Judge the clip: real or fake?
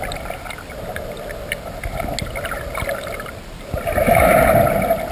real